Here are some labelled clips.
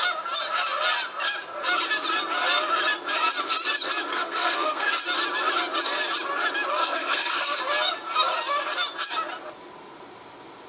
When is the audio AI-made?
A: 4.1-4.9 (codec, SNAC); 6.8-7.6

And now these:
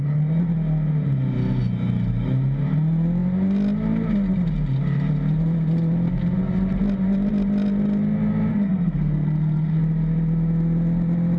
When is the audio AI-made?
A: 8.5-9.8 (codec, SNAC)

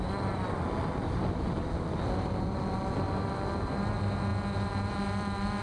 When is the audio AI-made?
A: none

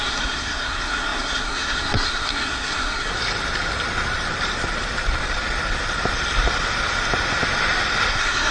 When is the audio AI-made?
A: 0.0-3.1 (codec, SNAC); 8.1-8.5

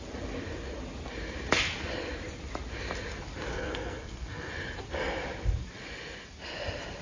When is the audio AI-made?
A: 3.5-4.5 (codec, SNAC)